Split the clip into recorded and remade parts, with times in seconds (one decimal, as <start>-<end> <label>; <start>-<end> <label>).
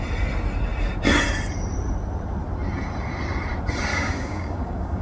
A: 0.0-3.9 recorded; 3.9-5.0 remade